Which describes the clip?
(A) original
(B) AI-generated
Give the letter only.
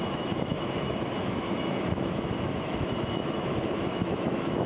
B